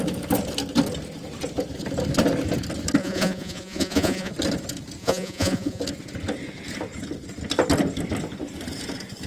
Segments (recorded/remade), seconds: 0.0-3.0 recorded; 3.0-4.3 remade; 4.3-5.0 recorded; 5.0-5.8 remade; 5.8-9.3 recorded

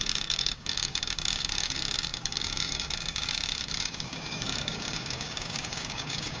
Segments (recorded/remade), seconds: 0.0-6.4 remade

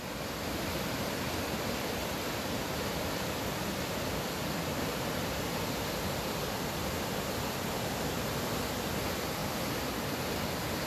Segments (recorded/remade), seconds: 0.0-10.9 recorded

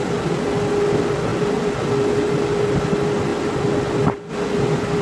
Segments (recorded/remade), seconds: 0.0-5.0 recorded

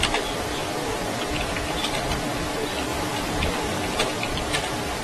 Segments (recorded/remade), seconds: 0.0-5.0 recorded

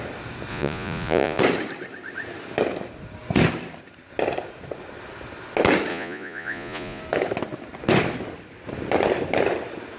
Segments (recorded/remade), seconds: 0.0-0.5 recorded; 0.5-1.4 remade; 1.4-5.9 recorded; 5.9-7.0 remade; 7.0-10.0 recorded

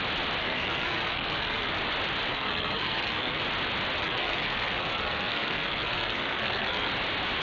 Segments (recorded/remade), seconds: 0.0-0.4 recorded; 0.4-1.7 remade; 1.7-2.3 recorded; 2.3-3.4 remade; 3.4-4.0 recorded; 4.0-6.9 remade; 6.9-7.4 recorded